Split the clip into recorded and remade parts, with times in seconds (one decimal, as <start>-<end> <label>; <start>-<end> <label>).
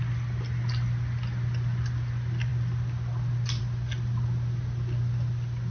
0.0-5.7 recorded